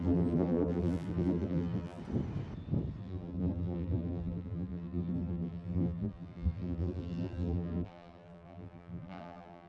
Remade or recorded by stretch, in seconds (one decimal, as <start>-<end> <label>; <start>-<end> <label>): 0.0-2.0 remade; 2.0-3.0 recorded; 3.0-9.7 remade